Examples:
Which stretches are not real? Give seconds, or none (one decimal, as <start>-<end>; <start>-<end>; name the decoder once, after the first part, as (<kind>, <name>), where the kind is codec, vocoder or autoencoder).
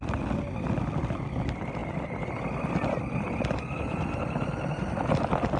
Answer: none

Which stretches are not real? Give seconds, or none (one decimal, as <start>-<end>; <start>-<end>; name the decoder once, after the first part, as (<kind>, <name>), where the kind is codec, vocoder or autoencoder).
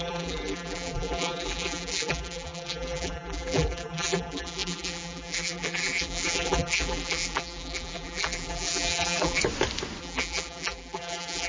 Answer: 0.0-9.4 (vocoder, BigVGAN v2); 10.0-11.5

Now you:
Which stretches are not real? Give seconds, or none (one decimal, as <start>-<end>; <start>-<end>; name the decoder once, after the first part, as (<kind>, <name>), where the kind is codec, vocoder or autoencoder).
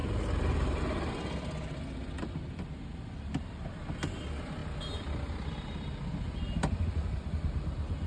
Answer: 0.0-0.8 (vocoder, BigVGAN v2); 2.9-3.8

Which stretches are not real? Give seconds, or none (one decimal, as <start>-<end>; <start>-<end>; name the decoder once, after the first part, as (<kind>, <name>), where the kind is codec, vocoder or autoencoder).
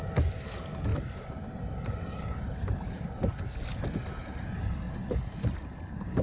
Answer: 0.9-3.3 (vocoder, BigVGAN v2); 4.2-6.2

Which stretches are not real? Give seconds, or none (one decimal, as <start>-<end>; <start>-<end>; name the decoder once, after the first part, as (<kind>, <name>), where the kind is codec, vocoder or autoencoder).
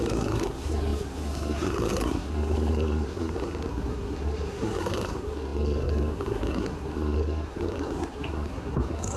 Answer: 0.0-9.2 (codec, SNAC)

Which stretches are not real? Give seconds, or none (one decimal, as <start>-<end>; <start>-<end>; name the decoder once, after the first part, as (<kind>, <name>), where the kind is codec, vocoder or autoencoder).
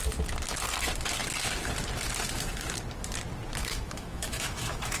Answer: 3.6-5.0 (autoencoder, DAC-VAE)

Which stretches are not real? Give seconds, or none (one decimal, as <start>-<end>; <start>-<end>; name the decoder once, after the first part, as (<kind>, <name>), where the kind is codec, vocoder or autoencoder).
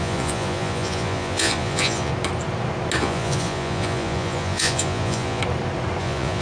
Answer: 0.0-2.1 (vocoder, Vocos); 3.0-5.4; 6.0-6.4